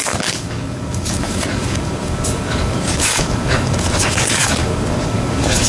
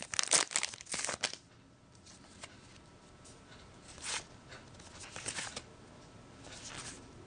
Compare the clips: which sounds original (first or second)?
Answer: second